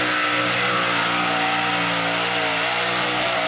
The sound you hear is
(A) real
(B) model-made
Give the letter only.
A